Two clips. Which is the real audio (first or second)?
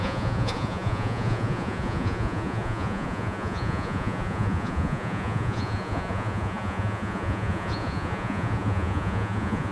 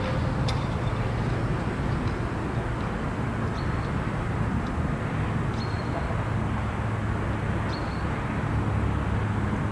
second